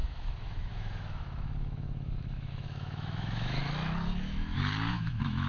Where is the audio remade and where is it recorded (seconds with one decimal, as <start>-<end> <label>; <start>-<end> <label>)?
0.0-3.6 remade; 3.6-4.9 recorded; 4.9-5.5 remade